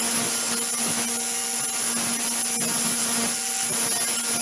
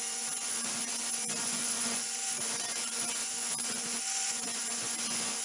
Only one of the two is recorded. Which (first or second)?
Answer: first